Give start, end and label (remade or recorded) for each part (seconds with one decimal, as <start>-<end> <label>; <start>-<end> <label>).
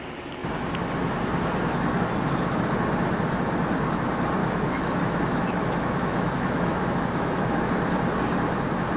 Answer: 0.0-4.4 recorded; 4.4-7.7 remade; 7.7-9.0 recorded